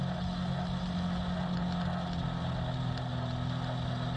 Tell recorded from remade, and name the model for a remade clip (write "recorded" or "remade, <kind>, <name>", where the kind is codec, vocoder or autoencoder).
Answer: recorded